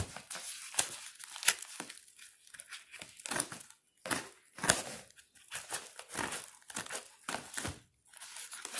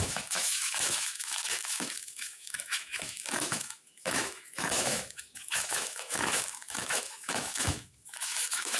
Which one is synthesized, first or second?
second